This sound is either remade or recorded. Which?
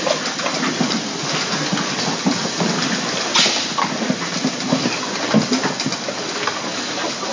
recorded